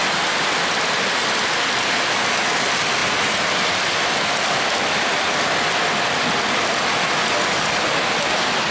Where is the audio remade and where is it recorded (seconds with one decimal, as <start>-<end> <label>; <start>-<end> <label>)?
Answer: 0.0-8.7 recorded